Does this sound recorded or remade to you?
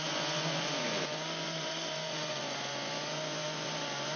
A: remade